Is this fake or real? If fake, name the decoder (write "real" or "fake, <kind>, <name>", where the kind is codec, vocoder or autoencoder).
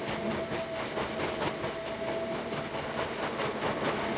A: real